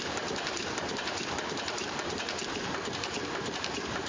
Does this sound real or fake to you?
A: fake